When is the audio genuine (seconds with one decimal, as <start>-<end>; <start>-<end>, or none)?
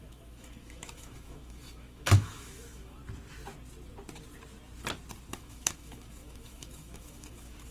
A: 3.0-5.3